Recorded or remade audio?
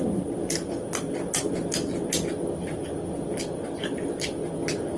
recorded